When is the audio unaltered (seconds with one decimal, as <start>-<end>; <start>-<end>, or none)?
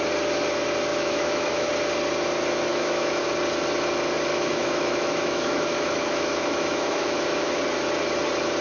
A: 0.0-0.9; 1.7-2.7; 3.2-4.3; 7.6-8.6